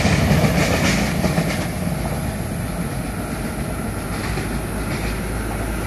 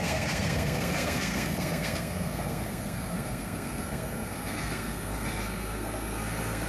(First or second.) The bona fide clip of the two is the first